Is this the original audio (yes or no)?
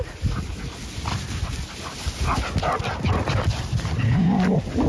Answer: yes